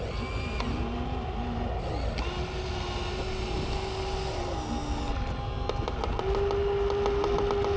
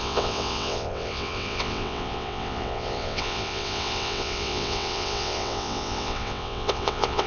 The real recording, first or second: first